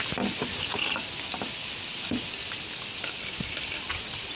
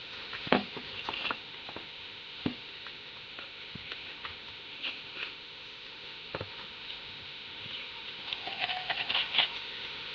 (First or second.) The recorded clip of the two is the first